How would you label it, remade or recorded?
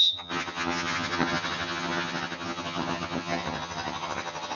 remade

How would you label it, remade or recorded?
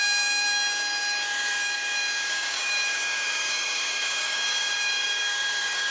remade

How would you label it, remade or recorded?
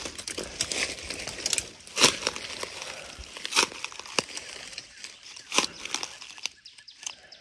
recorded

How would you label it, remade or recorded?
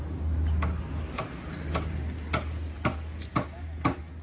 recorded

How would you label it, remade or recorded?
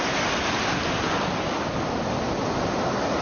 recorded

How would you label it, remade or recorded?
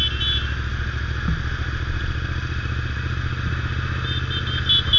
recorded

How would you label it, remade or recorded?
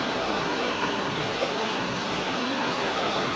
remade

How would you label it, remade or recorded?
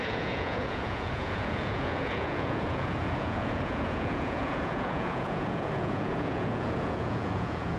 remade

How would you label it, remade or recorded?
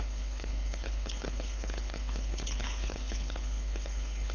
remade